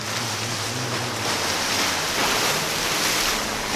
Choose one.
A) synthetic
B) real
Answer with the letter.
B